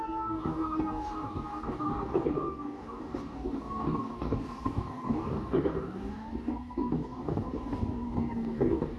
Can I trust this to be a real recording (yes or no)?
no